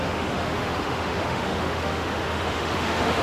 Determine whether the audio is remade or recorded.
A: remade